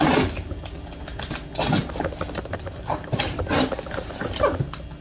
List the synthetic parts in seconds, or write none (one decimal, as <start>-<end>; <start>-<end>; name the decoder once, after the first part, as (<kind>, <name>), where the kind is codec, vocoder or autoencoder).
2.9-4.3 (vocoder, BigVGAN v2)